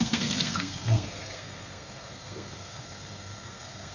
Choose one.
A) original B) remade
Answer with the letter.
B